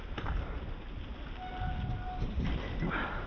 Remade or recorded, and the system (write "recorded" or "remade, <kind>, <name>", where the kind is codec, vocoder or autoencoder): recorded